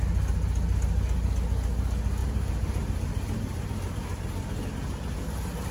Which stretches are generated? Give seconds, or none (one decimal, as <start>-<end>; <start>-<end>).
2.2-5.7